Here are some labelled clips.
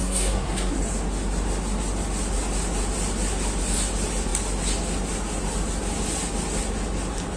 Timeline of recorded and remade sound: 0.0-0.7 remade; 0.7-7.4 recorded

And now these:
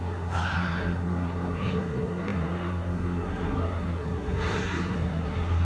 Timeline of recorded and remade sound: 0.0-5.6 remade

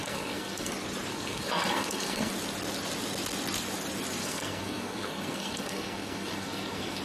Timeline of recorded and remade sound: 0.0-0.7 remade; 0.7-1.1 recorded; 1.1-2.3 remade; 2.3-4.2 recorded; 4.2-7.0 remade